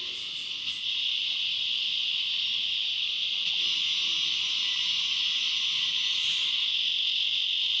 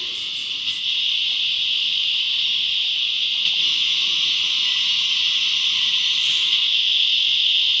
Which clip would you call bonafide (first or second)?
first